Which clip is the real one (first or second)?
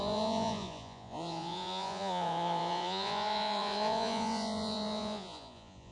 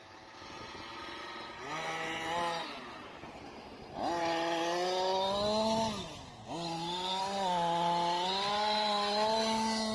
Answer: second